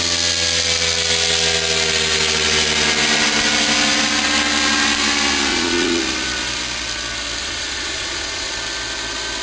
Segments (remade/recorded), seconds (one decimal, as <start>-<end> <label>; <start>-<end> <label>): 0.0-5.5 recorded; 5.5-6.0 remade; 6.0-7.4 recorded; 7.4-8.5 remade; 8.5-9.4 recorded